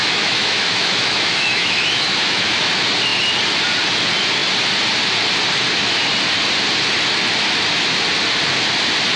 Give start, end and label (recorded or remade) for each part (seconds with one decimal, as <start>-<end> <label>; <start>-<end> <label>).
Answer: 0.0-2.7 remade; 2.7-9.2 recorded